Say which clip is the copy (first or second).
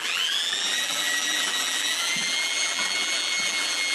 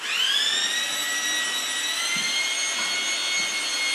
first